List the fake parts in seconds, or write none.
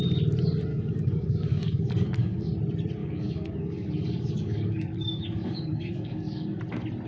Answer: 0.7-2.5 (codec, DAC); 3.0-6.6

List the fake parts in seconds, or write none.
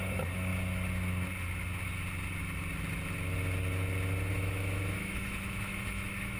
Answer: 0.0-0.5 (autoencoder, DAC-VAE); 4.3-6.4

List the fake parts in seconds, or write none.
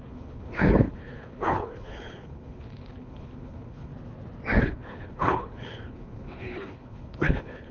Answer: 0.0-3.9 (codec, HILCodec); 4.6-7.7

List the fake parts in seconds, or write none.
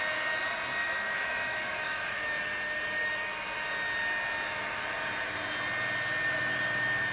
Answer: 0.8-2.3 (autoencoder, DAC-VAE)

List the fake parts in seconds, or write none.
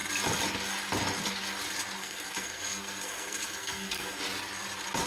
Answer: 2.0-4.2 (codec, SNAC)